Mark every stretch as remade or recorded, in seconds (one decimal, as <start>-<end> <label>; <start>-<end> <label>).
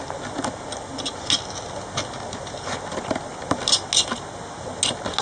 0.0-5.2 recorded